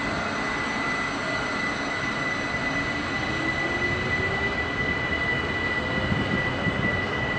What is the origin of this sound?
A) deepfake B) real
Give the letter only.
B